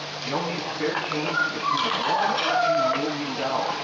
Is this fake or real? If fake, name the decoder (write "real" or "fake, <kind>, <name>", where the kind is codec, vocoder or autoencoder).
fake, vocoder, BigVGAN v2